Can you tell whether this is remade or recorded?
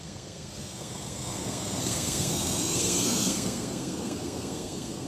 remade